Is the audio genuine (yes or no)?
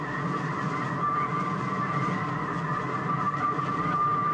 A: yes